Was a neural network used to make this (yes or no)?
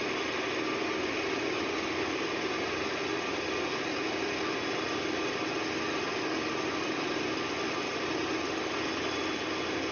no